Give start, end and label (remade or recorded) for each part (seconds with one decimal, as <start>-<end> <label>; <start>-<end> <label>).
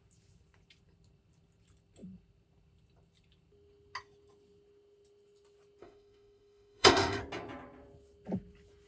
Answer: 0.0-5.8 recorded; 5.8-7.2 remade; 7.2-8.9 recorded